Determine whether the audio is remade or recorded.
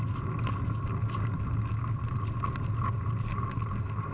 recorded